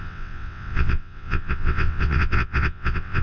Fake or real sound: fake